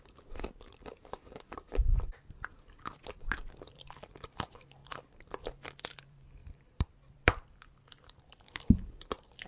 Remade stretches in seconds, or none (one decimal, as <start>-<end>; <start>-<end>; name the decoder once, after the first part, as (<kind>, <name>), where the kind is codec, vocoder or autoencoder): 0.0-9.5 (vocoder, BigVGAN v2)